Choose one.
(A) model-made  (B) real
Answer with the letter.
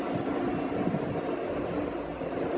B